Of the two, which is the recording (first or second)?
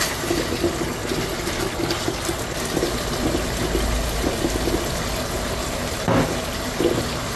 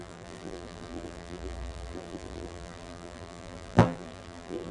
first